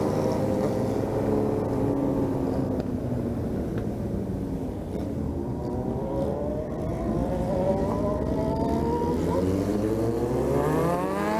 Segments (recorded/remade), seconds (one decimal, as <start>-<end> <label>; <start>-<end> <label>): 0.0-6.9 recorded; 6.9-7.7 remade; 7.7-11.4 recorded